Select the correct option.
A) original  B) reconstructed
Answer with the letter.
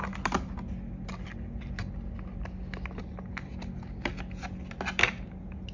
A